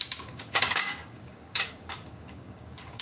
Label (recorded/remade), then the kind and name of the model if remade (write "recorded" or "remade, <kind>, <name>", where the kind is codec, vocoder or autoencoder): remade, codec, DAC